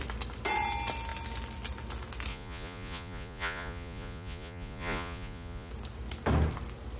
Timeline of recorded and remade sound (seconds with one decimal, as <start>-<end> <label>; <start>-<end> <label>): 0.0-2.3 recorded; 2.3-5.7 remade; 5.7-7.0 recorded